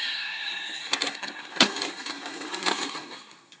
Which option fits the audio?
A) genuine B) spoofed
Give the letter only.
B